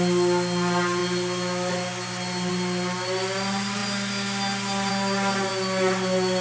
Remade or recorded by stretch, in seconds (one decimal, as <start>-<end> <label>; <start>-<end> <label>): 0.0-6.4 recorded